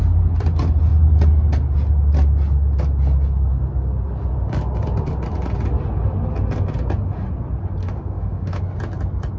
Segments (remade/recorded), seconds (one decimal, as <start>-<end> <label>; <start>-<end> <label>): 0.0-7.8 recorded; 7.8-8.6 remade; 8.6-9.4 recorded

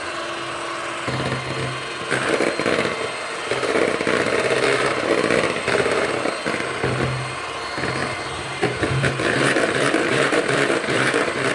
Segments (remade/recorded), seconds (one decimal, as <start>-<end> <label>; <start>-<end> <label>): 0.0-8.0 recorded; 8.0-11.5 remade

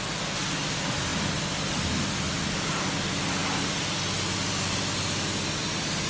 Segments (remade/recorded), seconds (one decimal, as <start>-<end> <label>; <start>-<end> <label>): 0.0-6.1 recorded

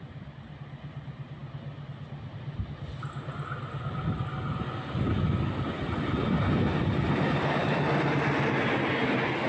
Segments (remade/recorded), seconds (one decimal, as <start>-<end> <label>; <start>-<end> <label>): 0.0-9.5 recorded